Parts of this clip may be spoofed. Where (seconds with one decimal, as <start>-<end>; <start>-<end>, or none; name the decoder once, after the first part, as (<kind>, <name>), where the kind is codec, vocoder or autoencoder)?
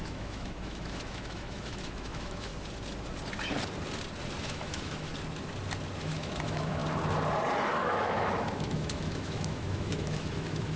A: 0.0-2.5 (autoencoder, DAC-VAE); 4.4-5.1; 6.0-6.8; 7.7-10.8